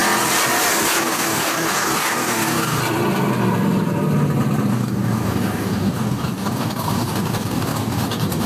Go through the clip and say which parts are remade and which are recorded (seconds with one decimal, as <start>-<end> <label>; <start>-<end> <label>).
0.0-1.0 recorded; 1.0-2.8 remade; 2.8-4.7 recorded; 4.7-8.5 remade